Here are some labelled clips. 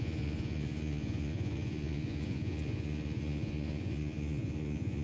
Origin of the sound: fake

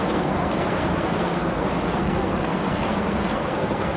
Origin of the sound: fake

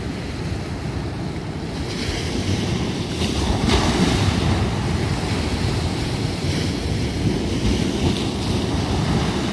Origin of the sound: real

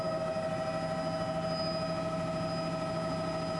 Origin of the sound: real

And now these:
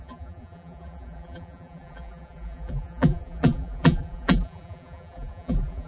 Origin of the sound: fake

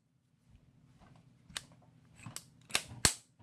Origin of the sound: real